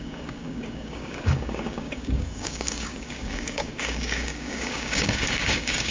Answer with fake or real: fake